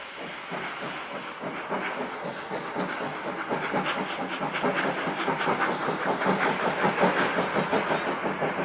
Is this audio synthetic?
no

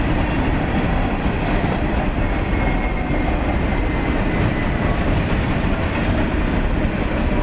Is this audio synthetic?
yes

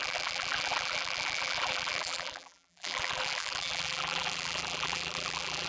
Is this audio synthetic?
yes